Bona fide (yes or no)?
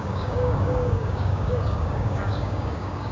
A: no